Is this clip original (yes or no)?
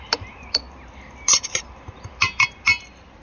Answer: yes